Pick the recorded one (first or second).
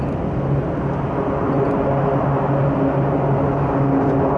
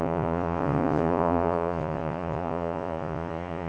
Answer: first